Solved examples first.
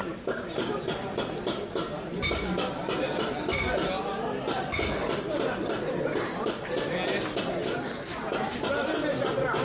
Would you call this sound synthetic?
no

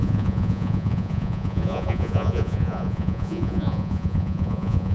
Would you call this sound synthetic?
yes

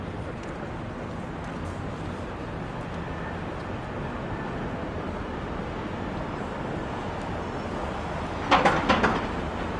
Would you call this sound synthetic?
no